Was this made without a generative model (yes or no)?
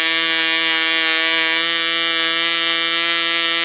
yes